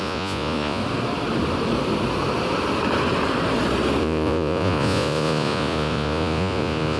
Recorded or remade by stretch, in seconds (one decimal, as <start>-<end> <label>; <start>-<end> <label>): 0.0-0.8 remade; 0.8-4.0 recorded; 4.0-7.0 remade